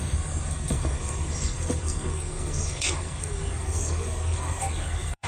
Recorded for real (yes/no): no